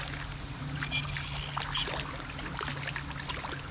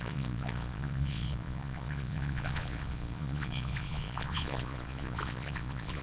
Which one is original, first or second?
first